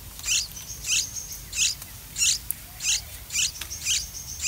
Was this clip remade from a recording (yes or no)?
no